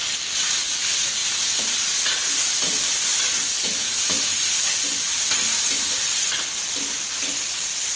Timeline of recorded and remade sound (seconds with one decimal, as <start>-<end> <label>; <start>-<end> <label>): 0.0-8.0 recorded